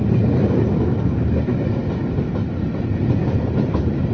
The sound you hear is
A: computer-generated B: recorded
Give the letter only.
B